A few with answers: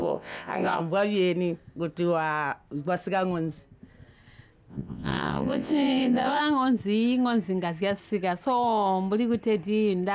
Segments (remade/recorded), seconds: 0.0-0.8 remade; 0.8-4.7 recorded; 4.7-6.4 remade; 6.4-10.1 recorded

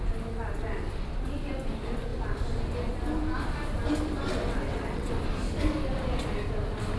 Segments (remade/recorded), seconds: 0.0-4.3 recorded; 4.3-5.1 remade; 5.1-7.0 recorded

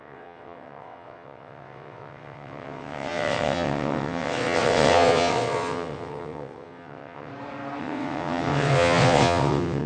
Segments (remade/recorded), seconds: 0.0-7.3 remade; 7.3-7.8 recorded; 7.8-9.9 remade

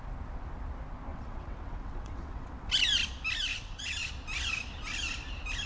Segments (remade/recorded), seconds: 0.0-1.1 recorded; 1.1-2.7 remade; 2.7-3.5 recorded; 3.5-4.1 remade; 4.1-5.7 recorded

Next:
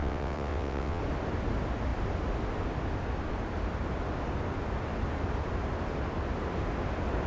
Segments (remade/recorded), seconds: 0.0-1.0 remade; 1.0-7.3 recorded

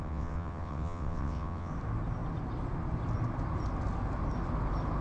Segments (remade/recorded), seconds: 0.0-1.7 remade; 1.7-5.0 recorded

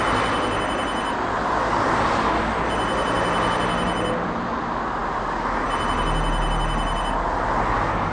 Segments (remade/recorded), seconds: 0.0-8.1 recorded